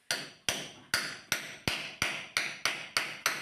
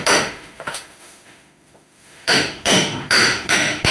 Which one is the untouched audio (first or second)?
first